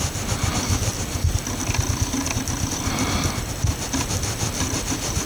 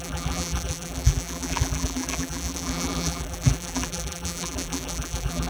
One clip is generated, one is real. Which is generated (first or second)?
second